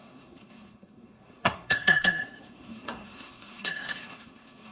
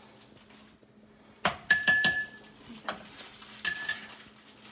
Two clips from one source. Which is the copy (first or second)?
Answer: first